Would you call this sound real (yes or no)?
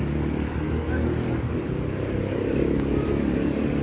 no